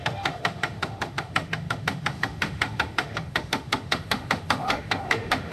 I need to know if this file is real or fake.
fake